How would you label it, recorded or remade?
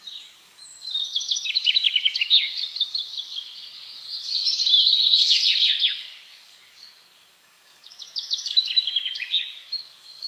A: remade